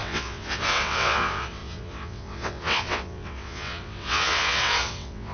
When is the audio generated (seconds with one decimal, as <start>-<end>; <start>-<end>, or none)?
0.0-5.3